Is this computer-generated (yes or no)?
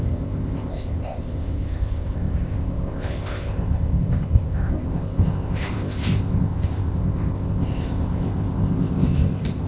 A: yes